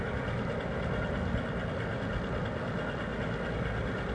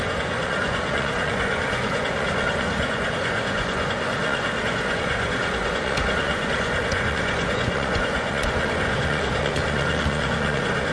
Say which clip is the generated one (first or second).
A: second